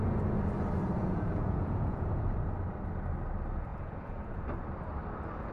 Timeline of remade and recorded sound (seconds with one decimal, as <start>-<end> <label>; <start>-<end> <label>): 0.0-1.0 recorded; 1.0-2.2 remade; 2.2-3.7 recorded; 3.7-4.2 remade; 4.2-5.5 recorded